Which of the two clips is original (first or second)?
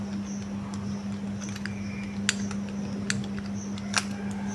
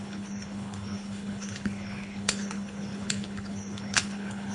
first